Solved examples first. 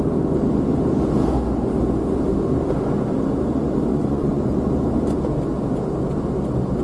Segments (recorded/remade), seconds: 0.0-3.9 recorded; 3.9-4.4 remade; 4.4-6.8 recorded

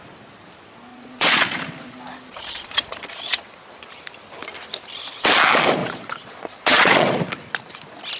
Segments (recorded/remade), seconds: 0.0-0.9 recorded; 0.9-1.6 remade; 1.6-2.3 recorded; 2.3-3.6 remade; 3.6-5.8 recorded; 5.8-7.3 remade; 7.3-8.2 recorded

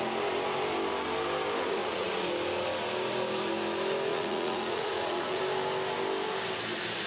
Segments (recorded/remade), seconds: 0.0-1.8 recorded; 1.8-2.3 remade; 2.3-4.1 recorded; 4.1-5.4 remade; 5.4-7.1 recorded

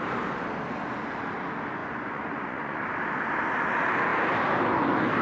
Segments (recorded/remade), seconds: 0.0-1.8 recorded; 1.8-2.8 remade; 2.8-5.2 recorded

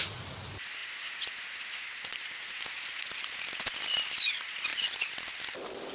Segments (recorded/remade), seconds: 0.0-5.9 recorded

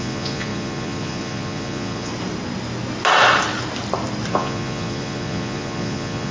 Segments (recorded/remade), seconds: 0.0-2.1 remade; 2.1-4.3 recorded; 4.3-6.3 remade